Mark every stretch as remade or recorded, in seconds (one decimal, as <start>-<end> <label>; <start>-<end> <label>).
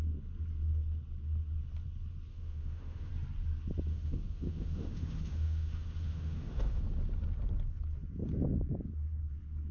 0.0-2.3 recorded; 2.3-3.1 remade; 3.1-3.9 recorded; 3.9-6.8 remade; 6.8-9.7 recorded